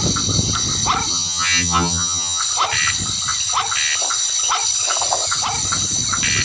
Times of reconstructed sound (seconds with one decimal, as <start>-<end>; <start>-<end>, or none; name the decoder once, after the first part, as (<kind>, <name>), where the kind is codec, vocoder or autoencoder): 1.1-2.4 (vocoder, HiFi-GAN)